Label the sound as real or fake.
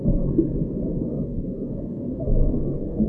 fake